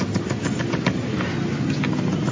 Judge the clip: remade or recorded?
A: recorded